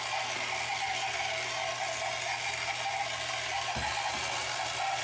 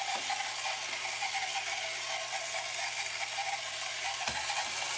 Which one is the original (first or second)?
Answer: first